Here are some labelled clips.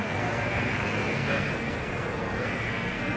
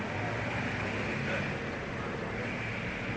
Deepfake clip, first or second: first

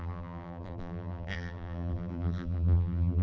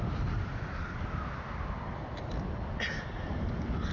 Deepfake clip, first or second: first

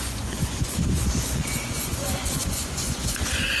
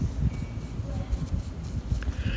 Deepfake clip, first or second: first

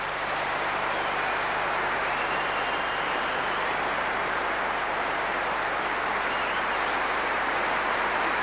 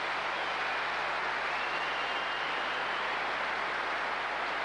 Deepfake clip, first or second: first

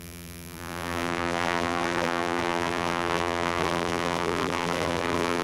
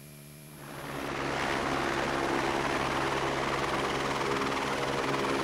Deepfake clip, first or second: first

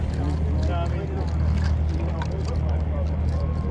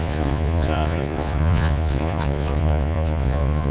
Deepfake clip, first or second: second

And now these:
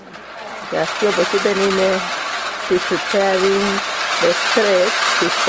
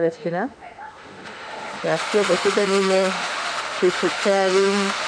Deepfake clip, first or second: second